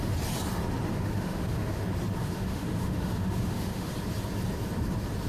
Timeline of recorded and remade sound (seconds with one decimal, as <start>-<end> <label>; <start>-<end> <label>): 0.0-0.9 recorded; 0.9-1.8 remade; 1.8-2.2 recorded; 2.2-3.9 remade; 3.9-5.3 recorded

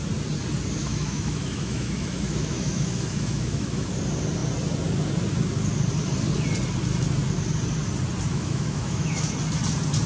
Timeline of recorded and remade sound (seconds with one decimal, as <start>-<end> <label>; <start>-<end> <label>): 0.0-0.8 recorded; 0.8-3.9 remade; 3.9-8.3 recorded; 8.3-9.3 remade; 9.3-10.1 recorded

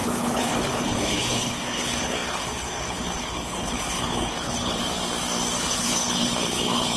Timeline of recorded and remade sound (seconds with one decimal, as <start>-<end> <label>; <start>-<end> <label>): 0.0-4.8 remade; 4.8-5.6 recorded; 5.6-7.0 remade